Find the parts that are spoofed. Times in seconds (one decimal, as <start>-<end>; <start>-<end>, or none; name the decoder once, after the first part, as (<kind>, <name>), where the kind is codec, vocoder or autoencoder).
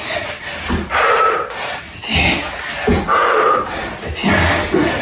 none